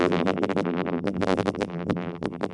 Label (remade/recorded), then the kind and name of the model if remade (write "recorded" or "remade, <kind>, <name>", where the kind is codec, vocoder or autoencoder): remade, vocoder, BigVGAN v2